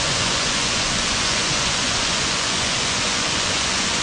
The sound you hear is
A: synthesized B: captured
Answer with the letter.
A